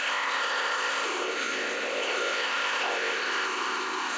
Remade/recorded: remade